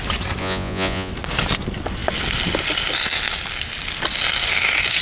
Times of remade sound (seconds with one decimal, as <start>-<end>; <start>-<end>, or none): 0.4-1.1